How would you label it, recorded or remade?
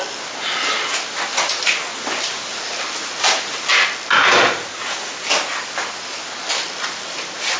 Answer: recorded